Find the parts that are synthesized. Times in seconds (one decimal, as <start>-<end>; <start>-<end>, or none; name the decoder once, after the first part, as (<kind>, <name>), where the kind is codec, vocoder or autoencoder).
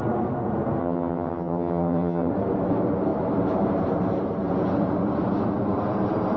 0.8-2.3 (vocoder, HiFi-GAN)